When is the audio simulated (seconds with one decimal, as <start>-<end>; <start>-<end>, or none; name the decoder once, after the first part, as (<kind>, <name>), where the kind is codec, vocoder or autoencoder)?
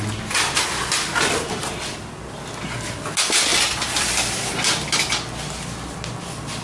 3.5-5.1 (vocoder, BigVGAN v2)